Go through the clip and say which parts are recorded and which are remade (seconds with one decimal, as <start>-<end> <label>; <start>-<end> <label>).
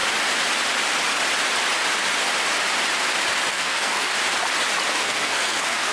0.0-3.5 recorded; 3.5-4.1 remade; 4.1-4.9 recorded; 4.9-5.9 remade